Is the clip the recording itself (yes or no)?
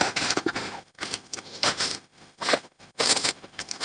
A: no